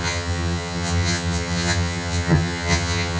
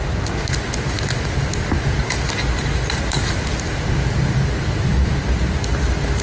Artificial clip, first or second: first